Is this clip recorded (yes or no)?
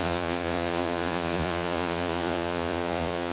no